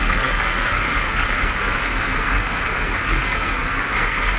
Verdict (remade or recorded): remade